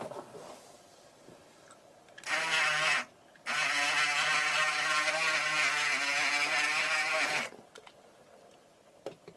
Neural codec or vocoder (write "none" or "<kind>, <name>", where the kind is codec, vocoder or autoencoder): none